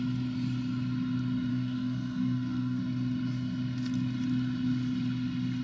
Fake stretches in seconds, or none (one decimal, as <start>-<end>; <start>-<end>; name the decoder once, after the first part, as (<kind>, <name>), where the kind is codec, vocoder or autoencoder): 1.5-2.8 (codec, SNAC)